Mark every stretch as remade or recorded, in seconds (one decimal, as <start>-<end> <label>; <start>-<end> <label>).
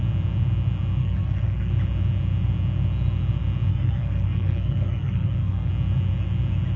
0.0-1.0 recorded; 1.0-1.7 remade; 1.7-3.7 recorded; 3.7-5.7 remade; 5.7-6.8 recorded